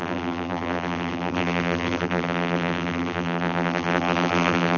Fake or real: fake